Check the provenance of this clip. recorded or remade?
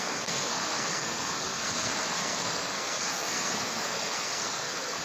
remade